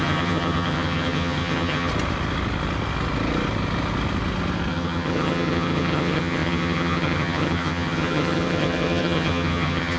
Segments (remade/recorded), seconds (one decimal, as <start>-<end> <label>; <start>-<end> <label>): 0.0-1.9 remade; 1.9-4.7 recorded; 4.7-10.0 remade